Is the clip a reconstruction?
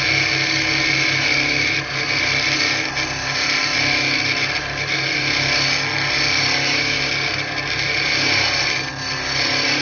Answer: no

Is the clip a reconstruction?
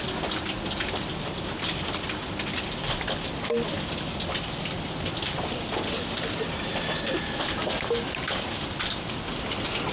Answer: no